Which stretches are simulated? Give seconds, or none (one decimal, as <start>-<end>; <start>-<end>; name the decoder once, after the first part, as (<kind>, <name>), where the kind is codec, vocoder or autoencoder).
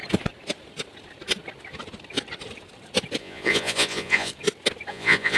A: 3.2-4.3 (vocoder, Vocos); 4.9-5.4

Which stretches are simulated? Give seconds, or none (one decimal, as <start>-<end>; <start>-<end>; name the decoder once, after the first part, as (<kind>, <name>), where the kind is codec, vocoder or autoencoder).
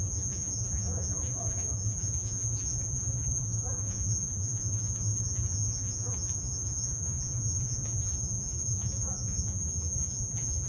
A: 0.0-10.7 (vocoder, Vocos)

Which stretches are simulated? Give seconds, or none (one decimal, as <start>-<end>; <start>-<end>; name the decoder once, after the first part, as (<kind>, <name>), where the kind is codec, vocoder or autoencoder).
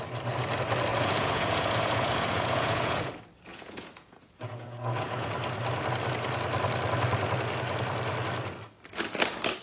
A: 0.9-3.1 (vocoder, Vocos); 3.5-5.3